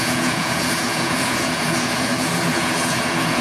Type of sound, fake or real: fake